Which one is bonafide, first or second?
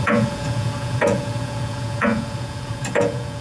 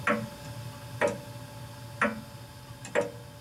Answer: second